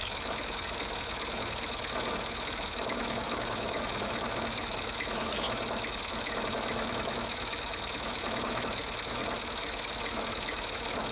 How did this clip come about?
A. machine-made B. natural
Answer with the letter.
A